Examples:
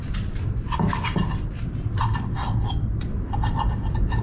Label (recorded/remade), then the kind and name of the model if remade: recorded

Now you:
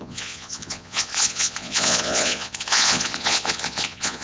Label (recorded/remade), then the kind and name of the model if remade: remade, vocoder, Vocos